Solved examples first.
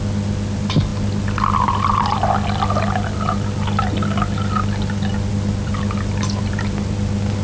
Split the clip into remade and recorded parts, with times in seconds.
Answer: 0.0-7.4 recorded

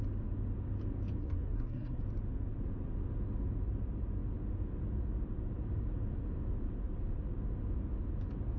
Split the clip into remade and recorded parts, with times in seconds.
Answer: 0.0-1.2 recorded; 1.2-2.0 remade; 2.0-8.6 recorded

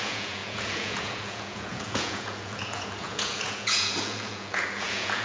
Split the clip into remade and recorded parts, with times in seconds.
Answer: 0.0-5.2 remade